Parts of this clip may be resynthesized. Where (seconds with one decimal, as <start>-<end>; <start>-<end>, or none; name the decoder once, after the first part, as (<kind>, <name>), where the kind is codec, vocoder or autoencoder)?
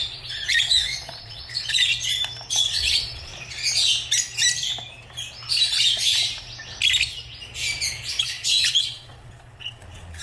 0.0-1.9 (vocoder, Vocos); 2.6-3.3; 8.2-10.2